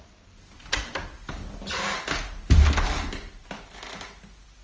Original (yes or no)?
yes